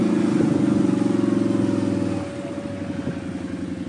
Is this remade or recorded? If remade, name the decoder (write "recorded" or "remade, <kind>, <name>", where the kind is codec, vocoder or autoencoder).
recorded